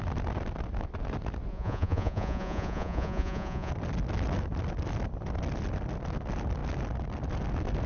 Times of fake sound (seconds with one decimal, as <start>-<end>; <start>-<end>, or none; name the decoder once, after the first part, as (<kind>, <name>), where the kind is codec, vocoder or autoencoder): 1.5-3.7 (vocoder, Vocos)